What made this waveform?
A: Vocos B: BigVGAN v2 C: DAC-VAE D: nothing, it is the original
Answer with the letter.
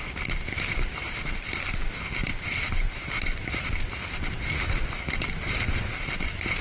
B